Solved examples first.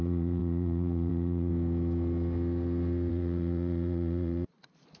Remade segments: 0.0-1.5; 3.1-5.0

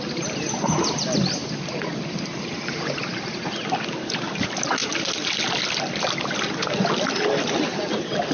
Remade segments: none

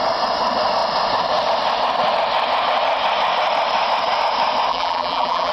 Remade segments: 4.7-5.5

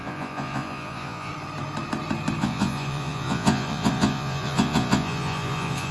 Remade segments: 0.0-1.3; 2.4-5.9

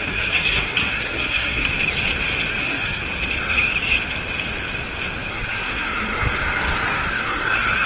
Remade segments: 0.0-1.7; 2.5-3.0; 5.3-6.3; 7.1-7.9

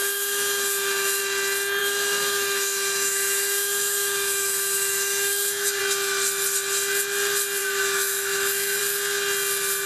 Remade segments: 0.0-1.2; 1.8-5.8; 7.6-8.8

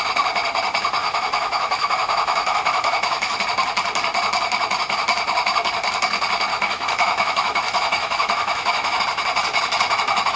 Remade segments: 1.0-3.4; 6.5-9.0